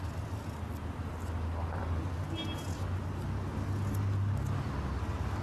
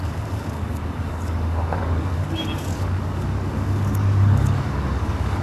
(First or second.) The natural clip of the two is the first